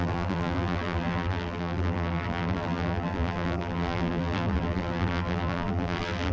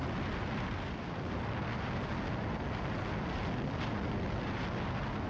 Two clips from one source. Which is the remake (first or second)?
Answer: first